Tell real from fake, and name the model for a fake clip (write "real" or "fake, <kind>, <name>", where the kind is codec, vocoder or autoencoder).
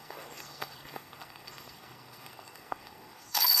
fake, codec, SNAC